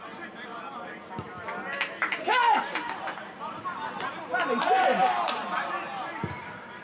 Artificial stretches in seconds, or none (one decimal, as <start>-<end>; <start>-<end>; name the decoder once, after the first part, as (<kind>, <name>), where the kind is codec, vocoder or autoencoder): 5.0-6.8 (vocoder, BigVGAN v2)